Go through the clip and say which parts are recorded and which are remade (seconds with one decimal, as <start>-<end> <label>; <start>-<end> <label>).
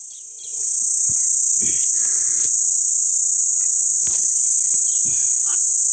0.0-5.9 recorded